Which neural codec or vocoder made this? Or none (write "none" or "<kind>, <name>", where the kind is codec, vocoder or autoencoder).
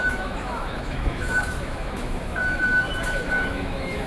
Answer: autoencoder, DAC-VAE